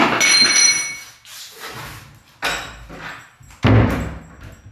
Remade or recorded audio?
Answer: recorded